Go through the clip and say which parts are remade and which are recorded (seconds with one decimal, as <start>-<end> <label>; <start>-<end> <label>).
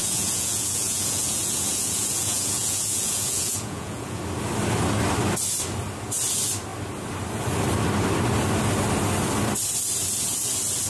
0.0-4.2 remade; 4.2-10.9 recorded